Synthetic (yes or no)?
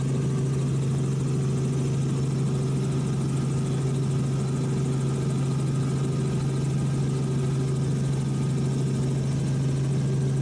no